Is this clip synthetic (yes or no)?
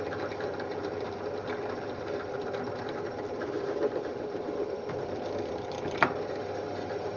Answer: yes